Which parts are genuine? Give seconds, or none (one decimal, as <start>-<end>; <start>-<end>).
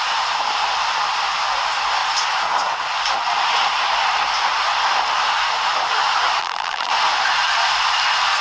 0.0-6.4; 6.9-8.4